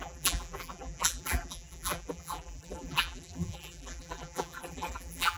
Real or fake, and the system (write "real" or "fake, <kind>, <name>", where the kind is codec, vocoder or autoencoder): fake, vocoder, BigVGAN v2